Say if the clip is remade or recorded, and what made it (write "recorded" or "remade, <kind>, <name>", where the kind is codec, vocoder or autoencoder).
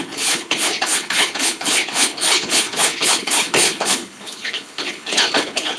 remade, codec, HILCodec